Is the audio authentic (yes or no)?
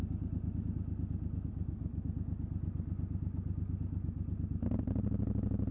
yes